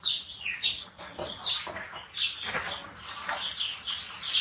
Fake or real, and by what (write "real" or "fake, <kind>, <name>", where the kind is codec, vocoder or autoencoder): real